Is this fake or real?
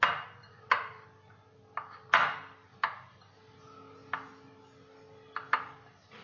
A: real